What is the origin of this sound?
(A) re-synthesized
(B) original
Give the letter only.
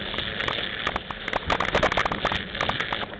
B